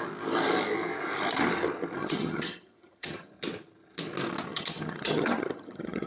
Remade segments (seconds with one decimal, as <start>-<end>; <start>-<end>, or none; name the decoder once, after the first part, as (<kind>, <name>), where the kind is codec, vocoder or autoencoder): 2.0-3.3 (vocoder, HiFi-GAN); 4.5-6.1